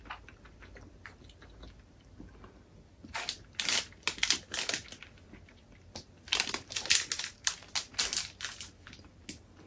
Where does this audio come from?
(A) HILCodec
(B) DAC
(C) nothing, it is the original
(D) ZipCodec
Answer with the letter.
C